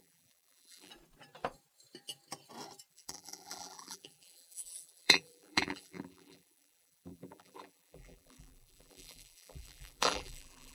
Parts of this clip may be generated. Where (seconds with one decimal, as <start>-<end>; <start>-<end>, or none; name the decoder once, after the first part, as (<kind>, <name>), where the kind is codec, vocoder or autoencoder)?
0.0-0.9 (vocoder, BigVGAN v2); 2.9-10.7